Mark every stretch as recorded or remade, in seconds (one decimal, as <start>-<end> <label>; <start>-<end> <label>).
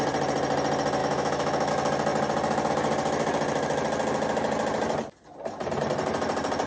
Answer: 0.0-1.0 recorded; 1.0-1.7 remade; 1.7-6.7 recorded